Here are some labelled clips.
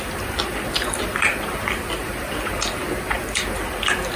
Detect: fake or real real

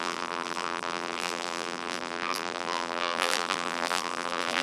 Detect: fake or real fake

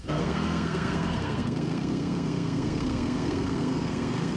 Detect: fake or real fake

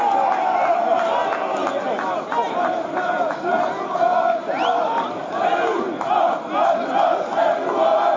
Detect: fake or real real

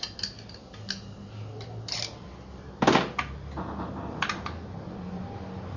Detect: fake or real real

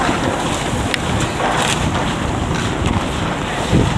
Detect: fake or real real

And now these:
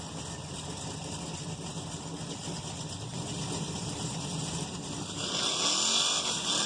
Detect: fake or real real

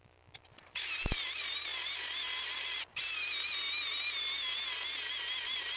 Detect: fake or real real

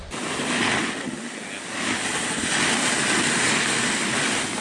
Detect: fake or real real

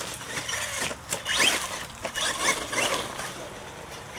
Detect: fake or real real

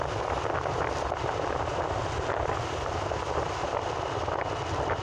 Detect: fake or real real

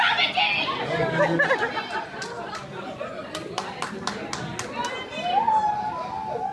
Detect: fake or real real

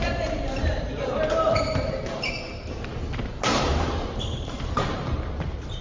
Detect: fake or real fake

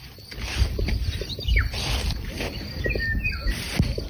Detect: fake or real real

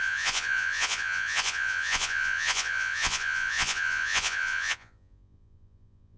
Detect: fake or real fake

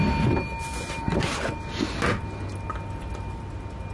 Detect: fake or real real